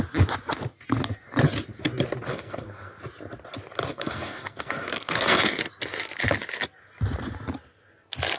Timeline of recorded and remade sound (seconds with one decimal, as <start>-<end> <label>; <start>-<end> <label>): 0.0-2.3 recorded; 2.3-3.0 remade; 3.0-3.9 recorded; 3.9-5.6 remade; 5.6-8.4 recorded